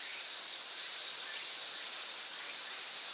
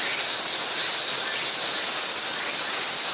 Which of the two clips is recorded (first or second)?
second